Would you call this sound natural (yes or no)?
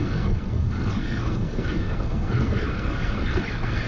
no